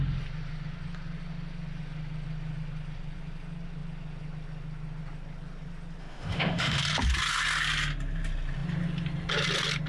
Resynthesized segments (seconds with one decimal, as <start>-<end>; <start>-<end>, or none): 6.0-6.8

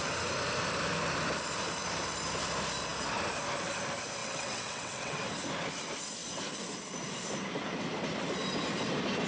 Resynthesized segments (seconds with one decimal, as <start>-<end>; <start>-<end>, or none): 4.2-5.2

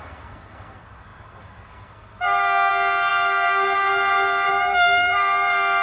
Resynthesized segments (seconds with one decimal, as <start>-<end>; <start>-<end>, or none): 0.0-5.8